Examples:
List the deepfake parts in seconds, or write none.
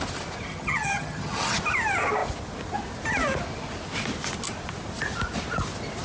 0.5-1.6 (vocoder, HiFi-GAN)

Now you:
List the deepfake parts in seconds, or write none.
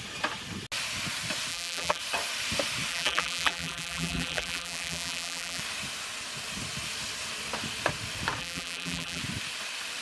1.5-2.0 (vocoder, BigVGAN v2); 2.9-5.6; 8.4-9.2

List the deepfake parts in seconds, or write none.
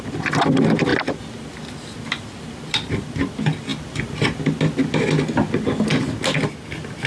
none